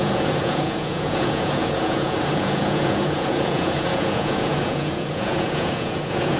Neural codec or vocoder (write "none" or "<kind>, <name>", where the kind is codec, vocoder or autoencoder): vocoder, Vocos